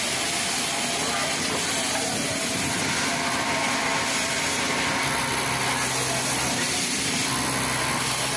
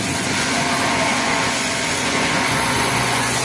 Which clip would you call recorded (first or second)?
first